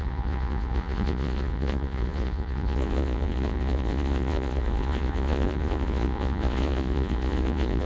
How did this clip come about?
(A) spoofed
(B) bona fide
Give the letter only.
A